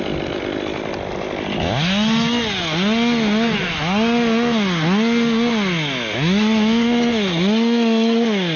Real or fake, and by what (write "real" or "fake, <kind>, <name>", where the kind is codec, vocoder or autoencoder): real